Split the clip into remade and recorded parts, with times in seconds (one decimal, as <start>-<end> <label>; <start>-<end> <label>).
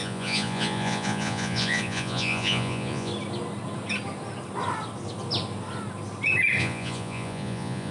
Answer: 0.0-3.1 remade; 3.1-6.6 recorded; 6.6-7.9 remade